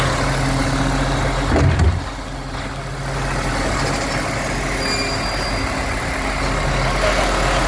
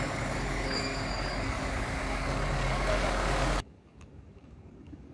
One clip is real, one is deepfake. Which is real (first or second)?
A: first